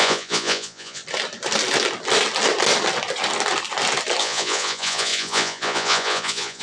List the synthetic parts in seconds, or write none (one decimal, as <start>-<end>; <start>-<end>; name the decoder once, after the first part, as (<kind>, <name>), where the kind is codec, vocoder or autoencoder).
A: 0.0-1.0 (vocoder, Vocos); 4.2-6.6